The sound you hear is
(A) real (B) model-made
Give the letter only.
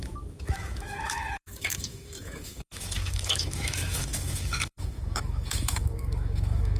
B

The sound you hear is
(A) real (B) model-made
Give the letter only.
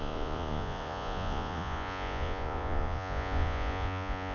B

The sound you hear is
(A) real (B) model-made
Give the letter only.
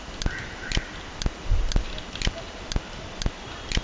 A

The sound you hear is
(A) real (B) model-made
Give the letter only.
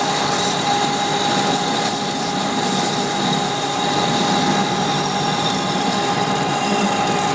A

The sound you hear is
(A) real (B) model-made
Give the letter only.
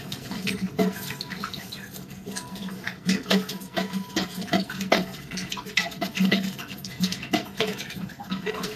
B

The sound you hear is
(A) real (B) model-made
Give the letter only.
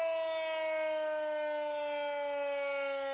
A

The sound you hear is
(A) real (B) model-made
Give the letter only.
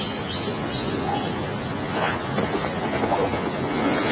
B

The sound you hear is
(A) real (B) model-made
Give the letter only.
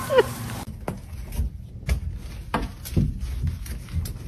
A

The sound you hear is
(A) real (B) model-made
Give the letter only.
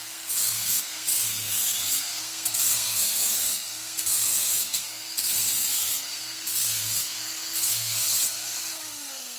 B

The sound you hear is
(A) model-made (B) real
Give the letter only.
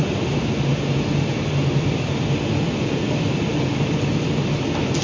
B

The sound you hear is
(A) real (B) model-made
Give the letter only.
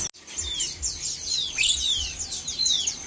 A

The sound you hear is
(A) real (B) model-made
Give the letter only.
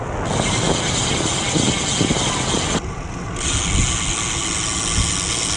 A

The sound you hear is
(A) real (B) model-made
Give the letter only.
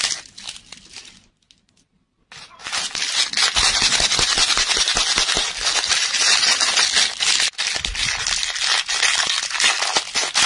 A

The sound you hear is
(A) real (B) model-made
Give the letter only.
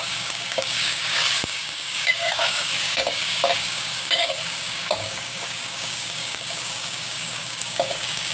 B